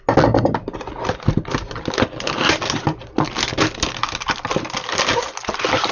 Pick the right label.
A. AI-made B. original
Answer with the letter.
B